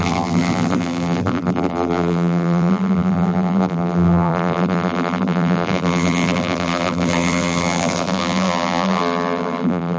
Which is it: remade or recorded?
remade